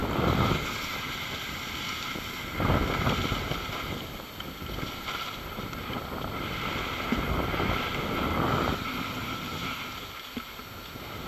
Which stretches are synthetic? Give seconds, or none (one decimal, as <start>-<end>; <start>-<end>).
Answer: 0.0-0.7